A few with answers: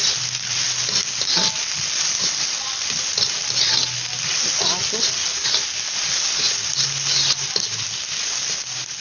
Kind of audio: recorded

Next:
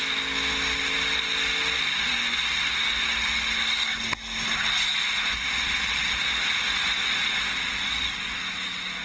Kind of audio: recorded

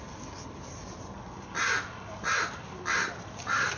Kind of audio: recorded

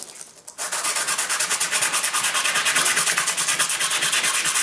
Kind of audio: recorded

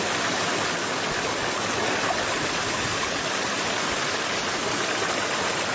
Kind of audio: recorded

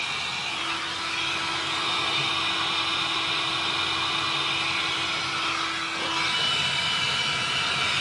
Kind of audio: recorded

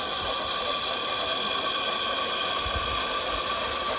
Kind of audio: recorded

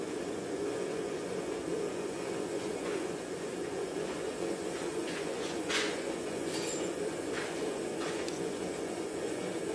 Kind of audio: remade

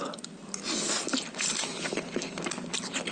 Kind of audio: recorded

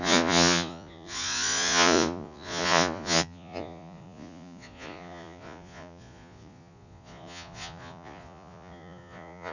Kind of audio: remade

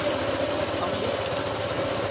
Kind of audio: recorded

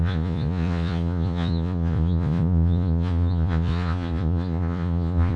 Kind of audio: remade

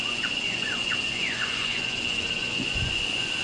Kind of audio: remade